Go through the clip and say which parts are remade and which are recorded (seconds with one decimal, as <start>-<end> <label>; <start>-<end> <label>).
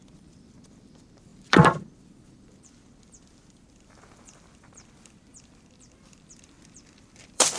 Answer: 0.0-7.6 remade